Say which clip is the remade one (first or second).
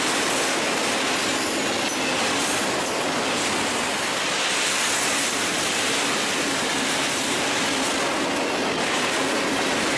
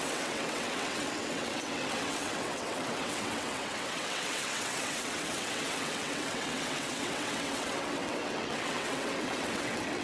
second